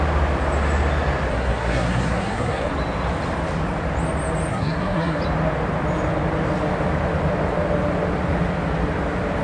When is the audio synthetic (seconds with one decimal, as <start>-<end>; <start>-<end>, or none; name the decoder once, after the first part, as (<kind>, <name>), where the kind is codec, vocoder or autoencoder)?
1.3-2.7 (codec, SNAC); 4.5-5.2